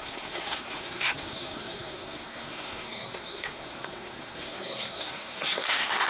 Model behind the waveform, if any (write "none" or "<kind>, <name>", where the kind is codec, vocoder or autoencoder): codec, SNAC